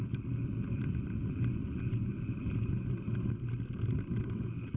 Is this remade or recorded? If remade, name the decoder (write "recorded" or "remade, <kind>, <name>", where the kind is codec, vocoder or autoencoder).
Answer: recorded